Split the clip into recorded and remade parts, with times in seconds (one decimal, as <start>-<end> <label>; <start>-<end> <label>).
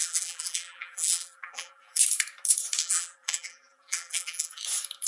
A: 0.0-2.0 remade; 2.0-2.8 recorded; 2.8-4.6 remade; 4.6-5.1 recorded